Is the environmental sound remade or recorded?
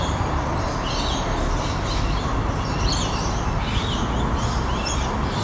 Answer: recorded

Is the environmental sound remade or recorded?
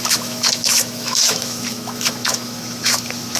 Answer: remade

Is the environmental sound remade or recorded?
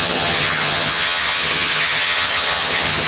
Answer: remade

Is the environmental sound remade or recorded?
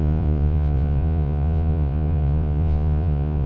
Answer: remade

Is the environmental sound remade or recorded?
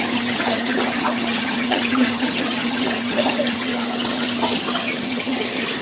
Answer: remade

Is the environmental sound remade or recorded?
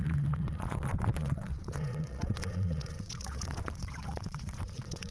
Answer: remade